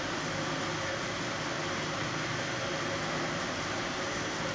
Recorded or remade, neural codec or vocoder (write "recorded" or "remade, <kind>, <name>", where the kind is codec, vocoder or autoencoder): recorded